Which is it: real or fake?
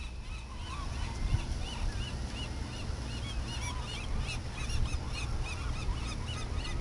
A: real